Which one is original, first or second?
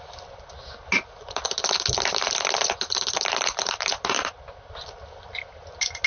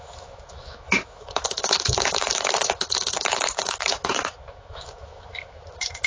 first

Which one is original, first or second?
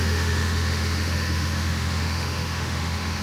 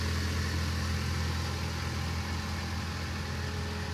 second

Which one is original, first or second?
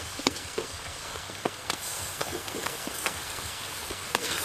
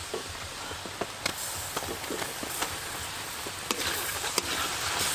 second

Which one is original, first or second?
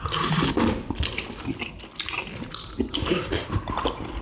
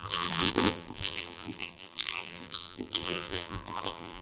first